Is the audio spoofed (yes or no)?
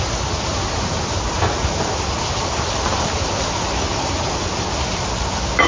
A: no